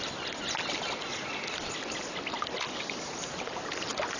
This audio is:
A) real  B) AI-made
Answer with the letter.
A